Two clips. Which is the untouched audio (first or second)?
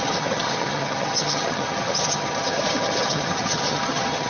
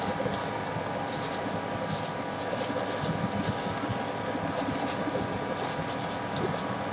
second